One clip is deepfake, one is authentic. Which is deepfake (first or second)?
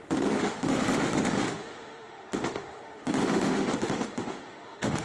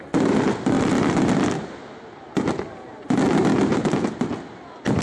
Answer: first